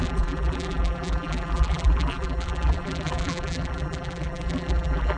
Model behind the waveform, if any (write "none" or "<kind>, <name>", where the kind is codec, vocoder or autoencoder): vocoder, BigVGAN v2